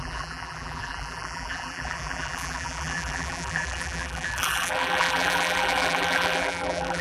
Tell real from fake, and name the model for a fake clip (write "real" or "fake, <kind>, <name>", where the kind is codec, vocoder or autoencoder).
fake, vocoder, BigVGAN v2